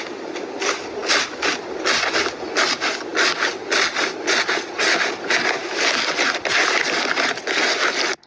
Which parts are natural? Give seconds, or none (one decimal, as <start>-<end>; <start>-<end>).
0.0-8.3